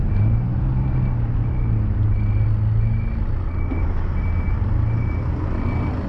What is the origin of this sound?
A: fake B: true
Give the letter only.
B